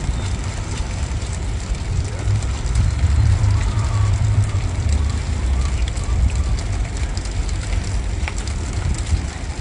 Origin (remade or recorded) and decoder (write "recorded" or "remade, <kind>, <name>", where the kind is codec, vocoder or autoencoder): remade, vocoder, BigVGAN v2